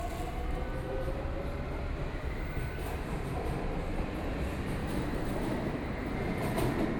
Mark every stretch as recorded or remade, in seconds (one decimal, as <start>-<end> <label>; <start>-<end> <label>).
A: 0.0-4.8 recorded; 4.8-6.1 remade; 6.1-7.0 recorded